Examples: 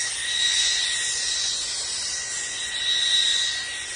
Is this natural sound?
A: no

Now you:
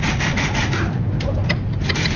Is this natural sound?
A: yes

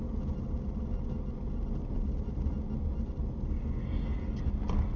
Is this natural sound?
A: yes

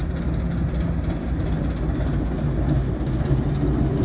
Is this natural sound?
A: yes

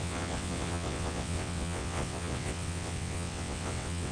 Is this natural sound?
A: no